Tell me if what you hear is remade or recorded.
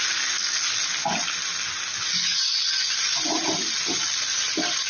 recorded